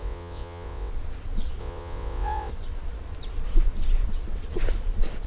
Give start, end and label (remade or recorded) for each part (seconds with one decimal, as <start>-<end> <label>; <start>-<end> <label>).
0.0-0.9 remade; 0.9-1.6 recorded; 1.6-2.5 remade; 2.5-5.3 recorded